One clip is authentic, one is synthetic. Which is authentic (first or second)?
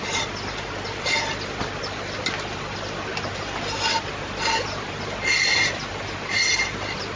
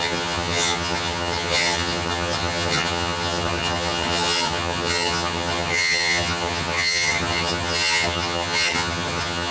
first